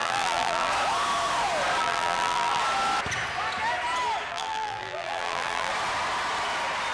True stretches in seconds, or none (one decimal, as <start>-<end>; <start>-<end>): 0.7-1.8; 2.6-4.3; 5.7-6.9